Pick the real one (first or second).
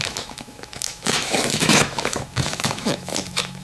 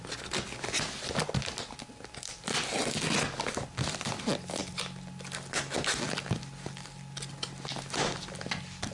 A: second